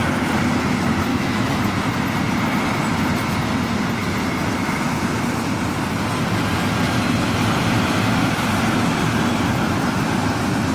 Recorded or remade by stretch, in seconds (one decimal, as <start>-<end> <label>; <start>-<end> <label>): 0.0-1.1 recorded; 1.1-1.6 remade; 1.6-10.7 recorded